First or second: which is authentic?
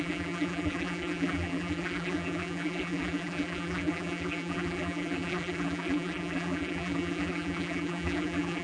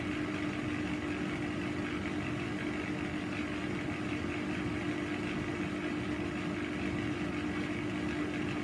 second